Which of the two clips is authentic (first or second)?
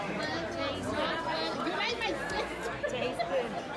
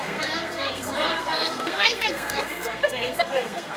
first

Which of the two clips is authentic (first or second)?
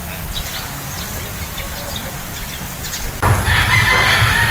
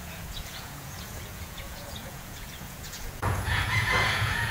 first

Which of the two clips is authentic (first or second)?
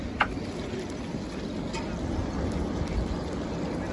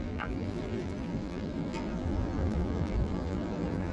first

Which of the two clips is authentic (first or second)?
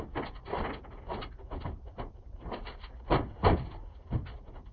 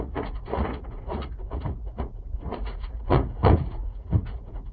first